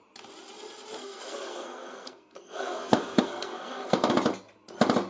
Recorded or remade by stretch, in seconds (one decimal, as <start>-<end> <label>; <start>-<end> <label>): 0.0-1.0 recorded; 1.0-4.1 remade; 4.1-5.1 recorded